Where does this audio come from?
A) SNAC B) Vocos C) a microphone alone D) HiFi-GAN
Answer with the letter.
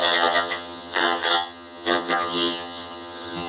D